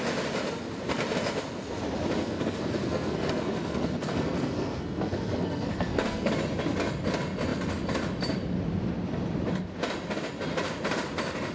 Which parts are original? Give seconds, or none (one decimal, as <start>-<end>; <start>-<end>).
0.0-2.2; 6.3-11.5